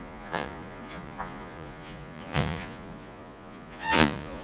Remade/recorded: remade